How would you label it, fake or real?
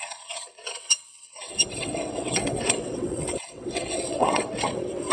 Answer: fake